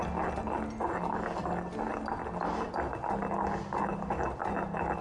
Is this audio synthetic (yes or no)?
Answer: no